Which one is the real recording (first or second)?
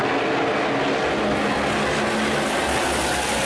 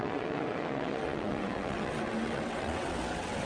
first